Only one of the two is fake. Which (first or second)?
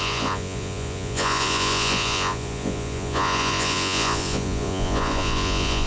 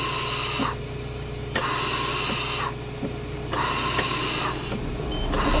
first